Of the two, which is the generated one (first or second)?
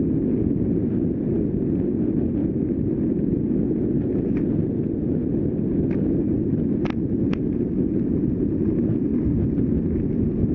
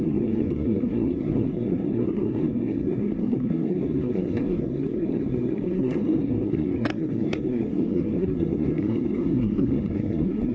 second